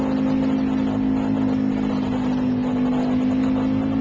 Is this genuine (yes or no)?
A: yes